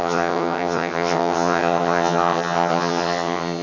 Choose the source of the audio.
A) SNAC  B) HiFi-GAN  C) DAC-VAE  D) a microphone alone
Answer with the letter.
B